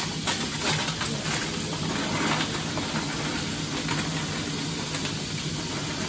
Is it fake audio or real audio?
real